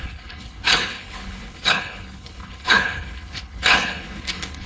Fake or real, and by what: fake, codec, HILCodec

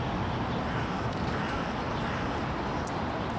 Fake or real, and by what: real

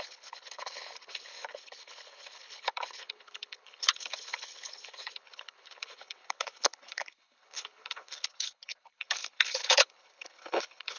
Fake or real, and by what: fake, codec, HILCodec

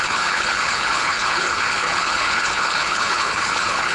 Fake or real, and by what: fake, codec, HILCodec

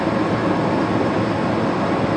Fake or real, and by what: real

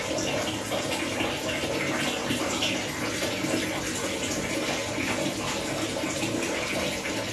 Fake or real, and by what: real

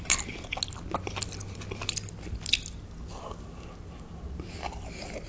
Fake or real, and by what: real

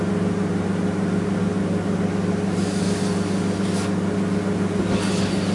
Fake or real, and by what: real